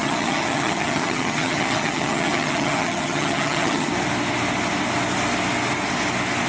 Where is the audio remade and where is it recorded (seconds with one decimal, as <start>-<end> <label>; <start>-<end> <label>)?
0.0-3.9 remade; 3.9-6.5 recorded